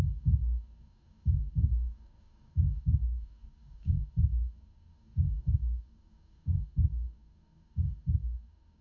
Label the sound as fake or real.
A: fake